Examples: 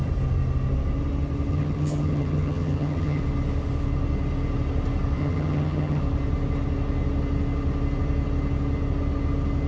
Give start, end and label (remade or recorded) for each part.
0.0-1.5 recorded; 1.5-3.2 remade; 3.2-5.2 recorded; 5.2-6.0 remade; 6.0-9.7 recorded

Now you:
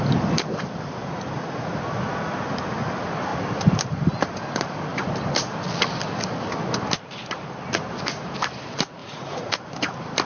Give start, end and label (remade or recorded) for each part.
0.0-1.0 recorded; 1.0-1.7 remade; 1.7-9.0 recorded; 9.0-9.6 remade; 9.6-10.2 recorded